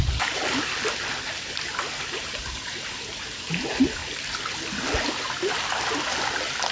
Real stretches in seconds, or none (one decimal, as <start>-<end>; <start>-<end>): 0.0-6.7